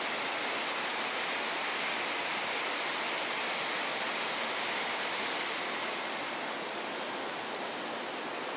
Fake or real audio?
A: real